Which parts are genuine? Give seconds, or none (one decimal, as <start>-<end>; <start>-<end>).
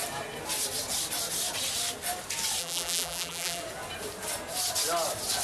0.0-2.6; 3.6-5.4